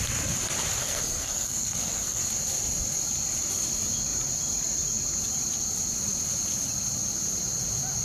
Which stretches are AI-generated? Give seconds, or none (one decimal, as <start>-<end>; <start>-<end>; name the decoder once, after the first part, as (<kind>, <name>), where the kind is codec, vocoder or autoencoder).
0.8-2.2 (codec, SNAC)